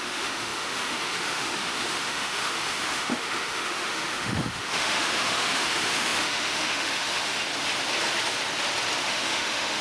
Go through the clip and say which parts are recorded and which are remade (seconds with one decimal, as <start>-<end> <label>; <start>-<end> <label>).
0.0-7.5 remade; 7.5-9.0 recorded; 9.0-9.8 remade